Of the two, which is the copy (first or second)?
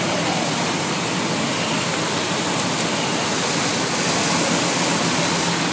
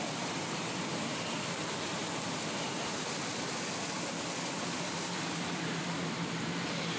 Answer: second